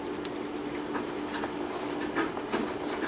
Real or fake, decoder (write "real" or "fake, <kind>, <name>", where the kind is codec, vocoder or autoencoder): real